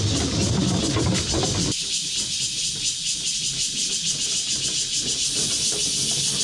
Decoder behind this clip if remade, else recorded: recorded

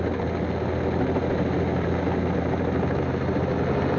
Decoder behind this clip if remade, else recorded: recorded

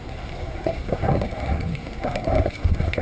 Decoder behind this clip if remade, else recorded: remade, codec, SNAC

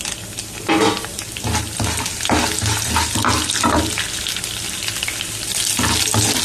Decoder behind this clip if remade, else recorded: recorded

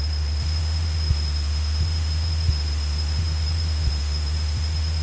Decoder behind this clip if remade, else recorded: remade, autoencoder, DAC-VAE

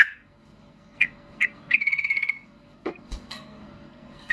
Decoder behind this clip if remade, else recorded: remade, codec, SNAC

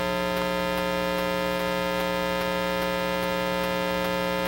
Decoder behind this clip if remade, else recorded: recorded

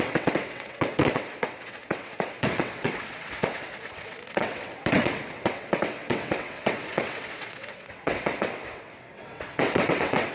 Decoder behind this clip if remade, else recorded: remade, vocoder, WaveNeXt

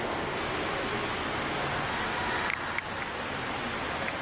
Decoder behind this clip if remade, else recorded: recorded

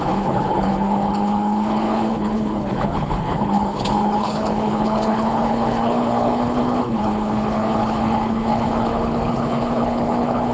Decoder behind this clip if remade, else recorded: remade, codec, HILCodec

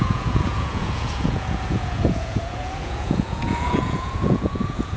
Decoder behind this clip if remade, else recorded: remade, vocoder, Vocos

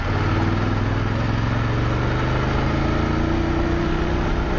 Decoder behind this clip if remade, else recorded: recorded